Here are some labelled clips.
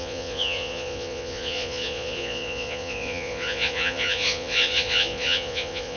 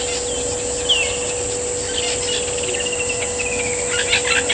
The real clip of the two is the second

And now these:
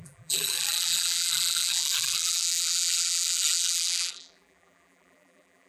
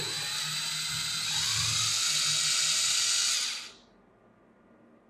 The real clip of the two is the second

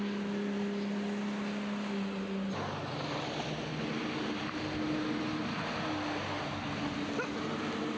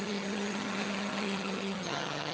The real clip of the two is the first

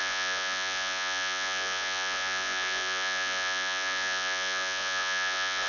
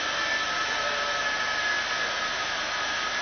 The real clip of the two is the second